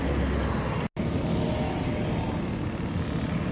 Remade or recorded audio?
recorded